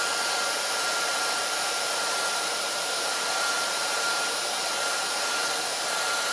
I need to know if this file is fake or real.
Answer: fake